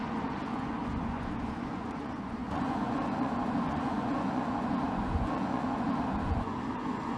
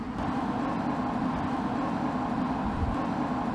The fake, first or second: first